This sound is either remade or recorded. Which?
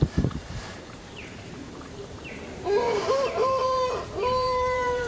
remade